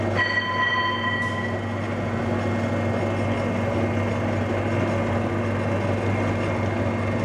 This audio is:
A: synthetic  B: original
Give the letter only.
B